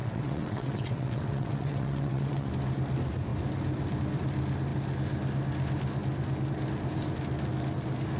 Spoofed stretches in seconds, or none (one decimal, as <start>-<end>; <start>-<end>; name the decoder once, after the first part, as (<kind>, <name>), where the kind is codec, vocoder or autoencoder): 0.0-2.5 (vocoder, WaveNeXt)